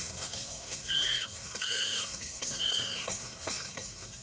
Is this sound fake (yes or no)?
yes